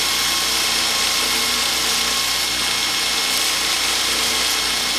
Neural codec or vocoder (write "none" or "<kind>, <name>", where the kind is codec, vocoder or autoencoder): none